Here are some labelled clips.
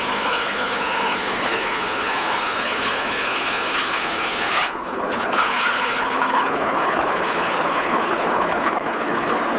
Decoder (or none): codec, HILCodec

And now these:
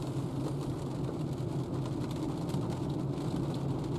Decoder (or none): none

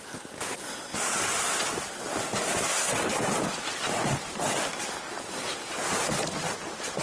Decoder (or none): none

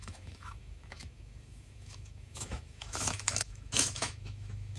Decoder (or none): autoencoder, DAC-VAE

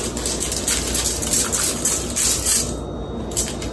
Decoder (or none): none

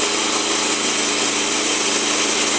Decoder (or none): none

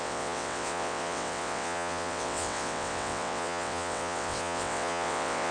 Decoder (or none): vocoder, WaveNeXt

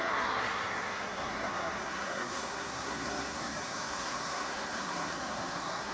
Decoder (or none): codec, SNAC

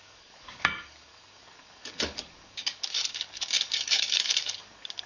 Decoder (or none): codec, DAC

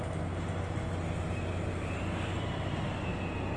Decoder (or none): none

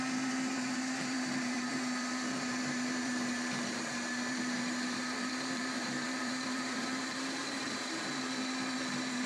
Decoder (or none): vocoder, BigVGAN v2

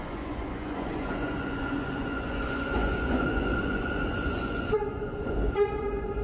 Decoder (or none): vocoder, Vocos